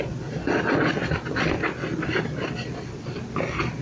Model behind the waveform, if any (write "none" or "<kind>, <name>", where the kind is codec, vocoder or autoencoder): none